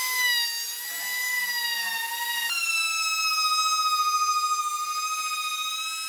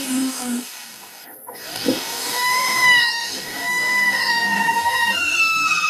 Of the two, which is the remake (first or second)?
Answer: second